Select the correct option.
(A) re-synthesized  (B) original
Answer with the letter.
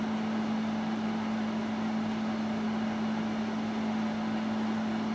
B